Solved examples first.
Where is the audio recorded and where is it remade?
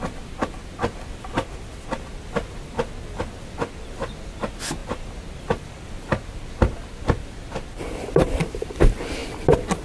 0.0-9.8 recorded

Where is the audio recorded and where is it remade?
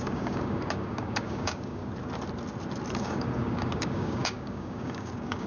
0.0-1.8 remade; 1.8-3.0 recorded; 3.0-5.5 remade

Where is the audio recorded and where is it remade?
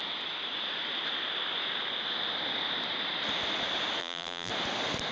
0.0-4.0 recorded; 4.0-4.5 remade; 4.5-5.1 recorded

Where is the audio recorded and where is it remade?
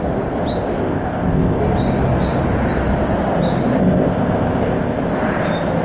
0.0-0.8 recorded; 0.8-1.6 remade; 1.6-3.8 recorded; 3.8-5.0 remade; 5.0-5.8 recorded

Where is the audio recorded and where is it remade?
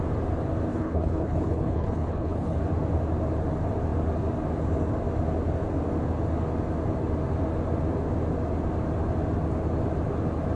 0.0-0.7 recorded; 0.7-2.6 remade; 2.6-10.6 recorded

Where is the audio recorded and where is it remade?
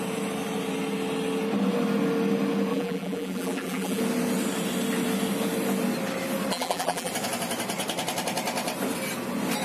0.0-2.7 recorded; 2.7-4.0 remade; 4.0-6.5 recorded; 6.5-7.1 remade; 7.1-9.6 recorded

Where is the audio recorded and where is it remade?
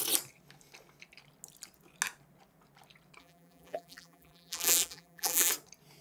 0.0-3.2 recorded; 3.2-5.5 remade; 5.5-6.0 recorded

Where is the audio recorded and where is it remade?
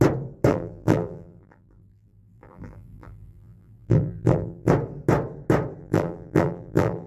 0.0-0.5 recorded; 0.5-4.7 remade; 4.7-5.8 recorded; 5.8-7.1 remade